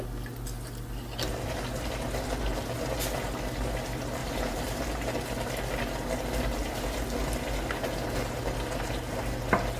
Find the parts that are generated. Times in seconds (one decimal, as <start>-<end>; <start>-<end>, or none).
4.2-4.8